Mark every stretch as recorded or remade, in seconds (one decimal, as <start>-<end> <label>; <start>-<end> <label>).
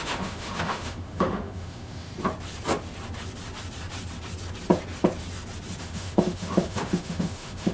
0.0-2.1 remade; 2.1-5.8 recorded; 5.8-7.7 remade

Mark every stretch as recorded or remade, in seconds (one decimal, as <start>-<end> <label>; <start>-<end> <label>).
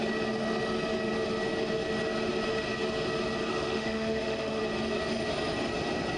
0.0-3.5 recorded; 3.5-4.6 remade; 4.6-6.2 recorded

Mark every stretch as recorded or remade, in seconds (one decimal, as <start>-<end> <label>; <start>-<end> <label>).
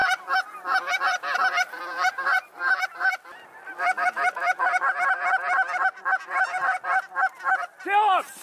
0.0-8.4 recorded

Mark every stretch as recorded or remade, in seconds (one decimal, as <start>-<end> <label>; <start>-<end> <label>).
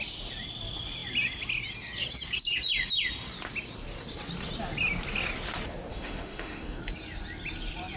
0.0-5.9 recorded; 5.9-6.8 remade; 6.8-8.0 recorded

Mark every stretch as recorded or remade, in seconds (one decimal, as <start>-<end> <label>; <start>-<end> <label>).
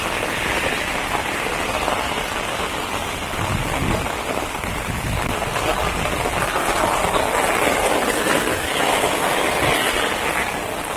0.0-8.5 recorded; 8.5-9.5 remade; 9.5-11.0 recorded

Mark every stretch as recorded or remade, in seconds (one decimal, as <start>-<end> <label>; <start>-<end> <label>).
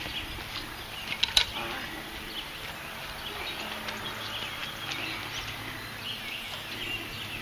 0.0-7.4 recorded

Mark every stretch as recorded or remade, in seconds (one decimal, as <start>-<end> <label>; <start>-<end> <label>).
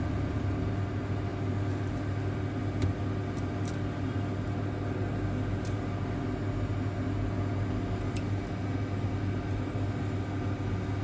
0.0-11.0 recorded